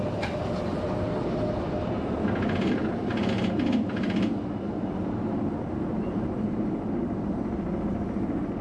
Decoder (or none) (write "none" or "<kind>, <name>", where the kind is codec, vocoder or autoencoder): none